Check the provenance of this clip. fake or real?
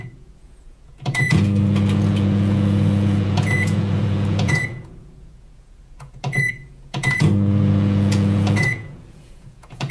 fake